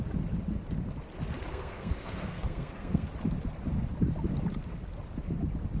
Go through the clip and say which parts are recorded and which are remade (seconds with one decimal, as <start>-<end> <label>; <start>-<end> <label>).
0.0-1.5 recorded; 1.5-3.1 remade; 3.1-5.8 recorded